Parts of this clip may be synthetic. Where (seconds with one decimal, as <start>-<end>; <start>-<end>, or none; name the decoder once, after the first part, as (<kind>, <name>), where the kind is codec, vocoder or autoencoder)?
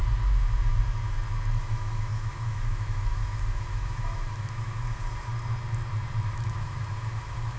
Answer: 1.6-5.3 (autoencoder, DAC-VAE); 6.3-7.6